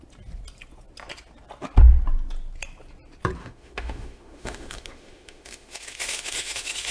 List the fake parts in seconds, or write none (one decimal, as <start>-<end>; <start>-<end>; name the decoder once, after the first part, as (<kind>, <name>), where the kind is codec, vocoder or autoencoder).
3.4-6.9 (autoencoder, DAC-VAE)